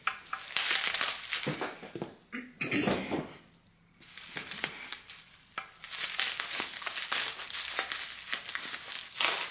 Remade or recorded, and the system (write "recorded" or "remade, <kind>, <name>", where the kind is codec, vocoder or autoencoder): recorded